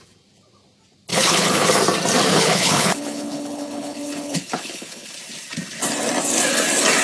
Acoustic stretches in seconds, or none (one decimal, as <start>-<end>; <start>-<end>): 0.0-1.1; 1.7-2.3; 5.1-7.0